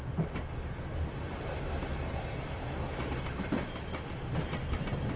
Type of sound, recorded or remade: recorded